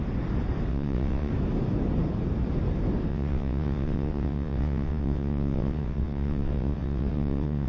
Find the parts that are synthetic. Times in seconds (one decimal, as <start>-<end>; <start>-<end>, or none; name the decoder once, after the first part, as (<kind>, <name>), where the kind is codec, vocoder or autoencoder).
0.7-1.3 (vocoder, WaveNeXt); 3.1-7.7